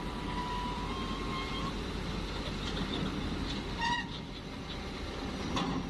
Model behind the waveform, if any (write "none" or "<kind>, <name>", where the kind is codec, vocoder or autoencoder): vocoder, BigVGAN v2